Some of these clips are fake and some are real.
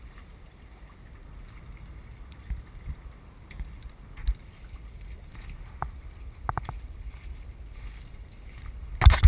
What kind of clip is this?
real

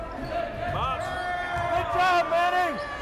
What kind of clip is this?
real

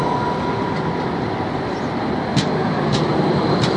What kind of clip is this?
real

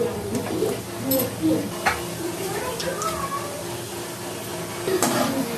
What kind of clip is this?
real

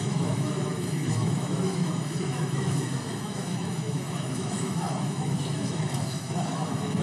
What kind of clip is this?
fake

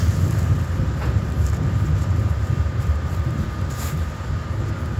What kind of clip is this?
fake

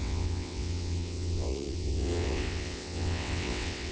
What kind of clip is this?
fake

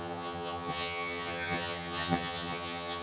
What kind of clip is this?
fake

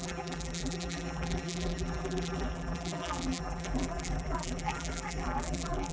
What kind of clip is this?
fake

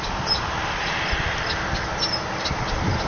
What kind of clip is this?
real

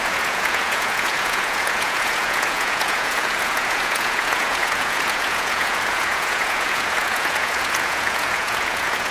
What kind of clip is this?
fake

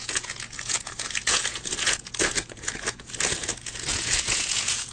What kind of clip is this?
fake